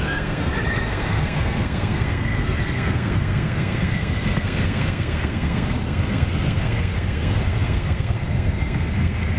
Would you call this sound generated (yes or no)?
yes